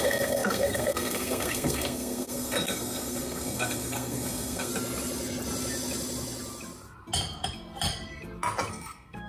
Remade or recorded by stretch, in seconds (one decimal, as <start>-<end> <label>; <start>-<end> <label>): 0.0-4.7 remade; 4.7-8.7 recorded; 8.7-9.3 remade